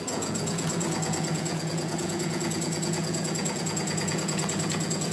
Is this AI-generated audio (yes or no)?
yes